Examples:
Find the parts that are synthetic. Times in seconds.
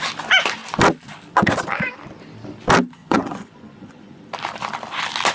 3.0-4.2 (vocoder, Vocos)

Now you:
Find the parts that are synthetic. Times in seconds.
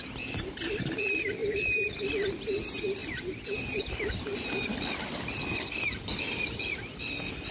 3.0-3.8 (vocoder, BigVGAN v2)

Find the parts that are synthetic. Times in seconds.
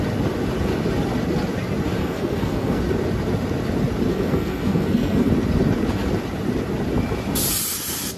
2.0-2.8 (codec, SNAC); 4.1-5.3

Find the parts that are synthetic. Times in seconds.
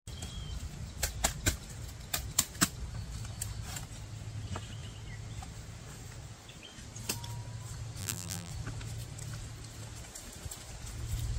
8.0-8.5 (vocoder, BigVGAN v2)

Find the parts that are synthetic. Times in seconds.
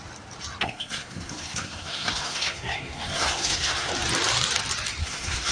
0.6-3.9 (codec, SNAC); 5.0-5.5